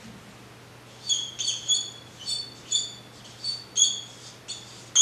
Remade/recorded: recorded